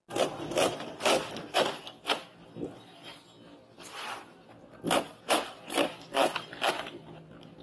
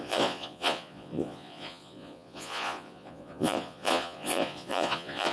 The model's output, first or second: second